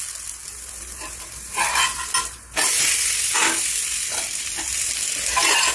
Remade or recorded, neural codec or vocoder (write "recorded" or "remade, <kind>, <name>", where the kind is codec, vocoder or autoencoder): recorded